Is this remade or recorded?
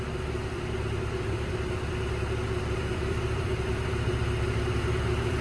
remade